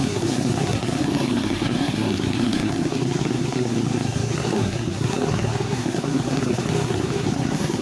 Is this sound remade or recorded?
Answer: remade